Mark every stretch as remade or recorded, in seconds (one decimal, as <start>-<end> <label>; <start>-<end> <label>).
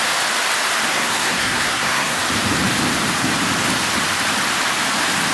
0.0-0.9 recorded; 0.9-2.2 remade; 2.2-5.3 recorded